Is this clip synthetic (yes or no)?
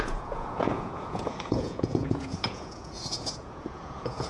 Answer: yes